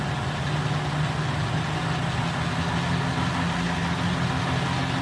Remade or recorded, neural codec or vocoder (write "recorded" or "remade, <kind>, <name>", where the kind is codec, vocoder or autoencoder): recorded